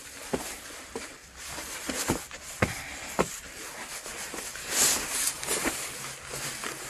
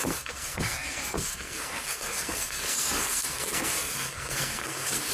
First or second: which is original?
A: first